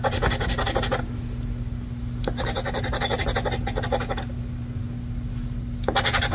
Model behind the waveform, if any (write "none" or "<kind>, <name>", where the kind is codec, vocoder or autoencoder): none